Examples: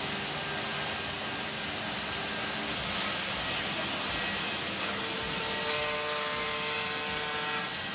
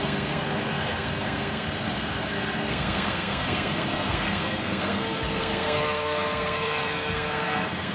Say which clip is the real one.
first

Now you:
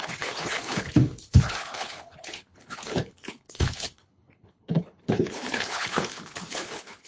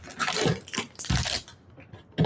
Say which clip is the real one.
second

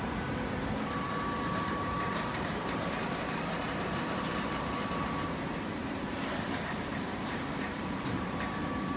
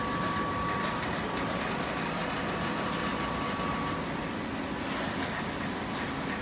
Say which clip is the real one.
second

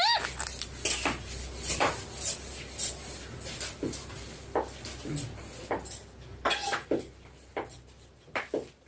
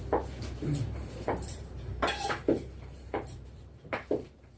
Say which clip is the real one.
first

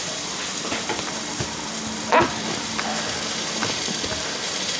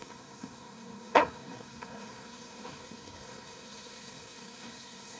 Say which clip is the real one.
first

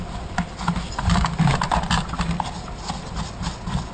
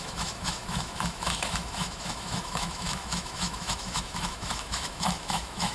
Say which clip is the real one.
first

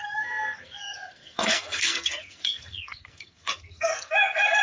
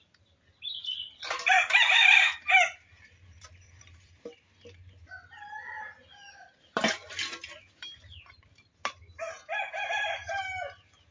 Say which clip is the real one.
second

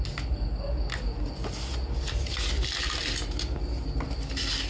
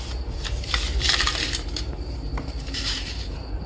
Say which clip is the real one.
first